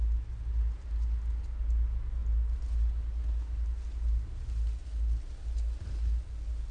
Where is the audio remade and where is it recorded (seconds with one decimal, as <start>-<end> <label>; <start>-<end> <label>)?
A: 0.0-6.7 recorded